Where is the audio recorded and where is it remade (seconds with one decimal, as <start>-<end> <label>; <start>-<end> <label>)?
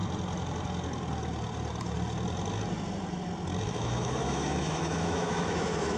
0.0-3.6 recorded; 3.6-6.0 remade